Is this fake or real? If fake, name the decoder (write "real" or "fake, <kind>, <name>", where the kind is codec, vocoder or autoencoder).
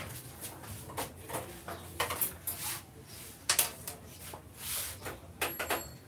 real